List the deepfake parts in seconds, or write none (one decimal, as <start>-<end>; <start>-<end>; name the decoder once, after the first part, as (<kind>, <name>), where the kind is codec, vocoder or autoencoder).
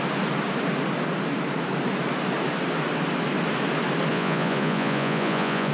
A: 4.1-5.7 (vocoder, Vocos)